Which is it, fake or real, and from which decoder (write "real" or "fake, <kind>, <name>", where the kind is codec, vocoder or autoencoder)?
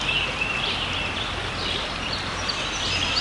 real